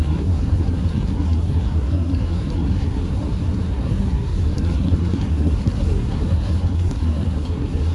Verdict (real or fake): fake